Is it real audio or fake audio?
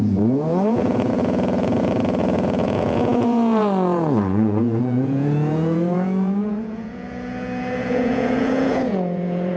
fake